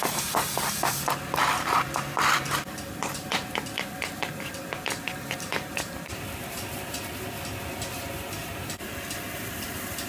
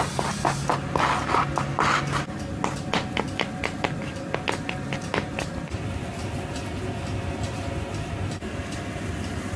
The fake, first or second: first